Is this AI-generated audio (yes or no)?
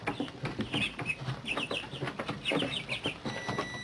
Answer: no